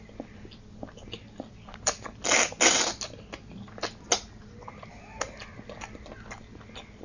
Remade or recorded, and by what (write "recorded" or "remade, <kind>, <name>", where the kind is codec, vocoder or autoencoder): recorded